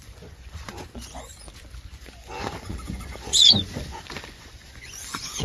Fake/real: fake